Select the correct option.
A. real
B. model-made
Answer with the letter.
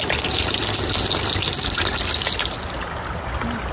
A